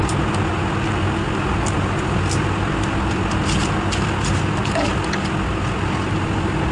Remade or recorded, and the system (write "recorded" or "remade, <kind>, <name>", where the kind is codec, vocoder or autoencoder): recorded